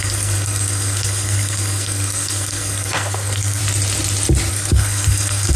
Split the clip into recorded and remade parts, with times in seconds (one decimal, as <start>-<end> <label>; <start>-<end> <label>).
0.0-3.6 remade; 3.6-4.5 recorded; 4.5-5.6 remade